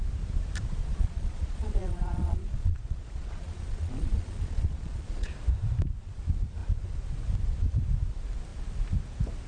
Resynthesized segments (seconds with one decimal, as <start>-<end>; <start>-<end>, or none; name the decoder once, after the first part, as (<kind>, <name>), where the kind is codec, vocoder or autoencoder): 0.8-5.3 (vocoder, Vocos)